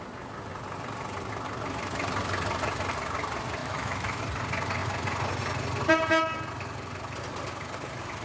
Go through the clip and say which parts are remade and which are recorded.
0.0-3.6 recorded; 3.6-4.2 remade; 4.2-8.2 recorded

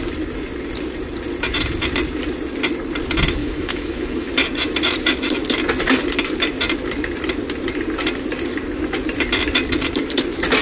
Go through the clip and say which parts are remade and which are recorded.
0.0-3.4 recorded; 3.4-4.3 remade; 4.3-10.6 recorded